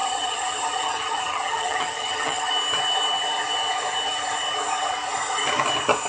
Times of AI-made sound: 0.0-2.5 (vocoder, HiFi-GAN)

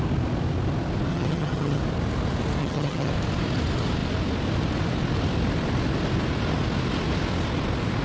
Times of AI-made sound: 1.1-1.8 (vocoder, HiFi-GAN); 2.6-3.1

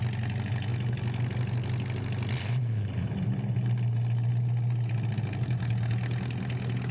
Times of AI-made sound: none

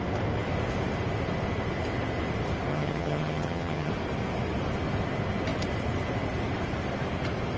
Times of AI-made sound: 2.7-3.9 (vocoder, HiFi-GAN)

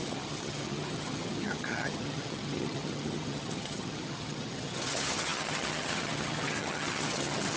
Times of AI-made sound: 0.0-7.6 (vocoder, HiFi-GAN)

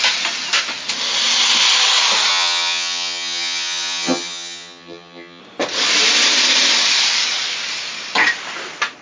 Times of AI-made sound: 2.3-5.4 (vocoder, HiFi-GAN)

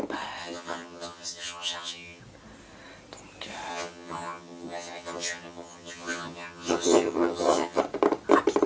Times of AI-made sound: 0.4-2.2 (vocoder, HiFi-GAN); 3.7-7.8